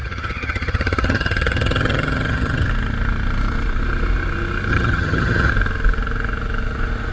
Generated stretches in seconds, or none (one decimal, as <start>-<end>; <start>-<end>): 0.0-2.7; 4.7-5.5